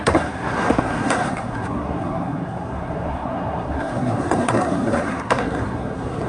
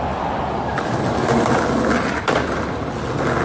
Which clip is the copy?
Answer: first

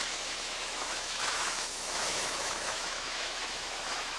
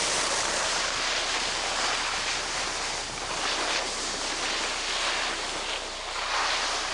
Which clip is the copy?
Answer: first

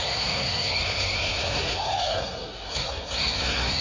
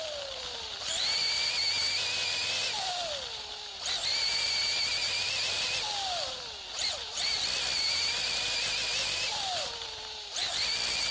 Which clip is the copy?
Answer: first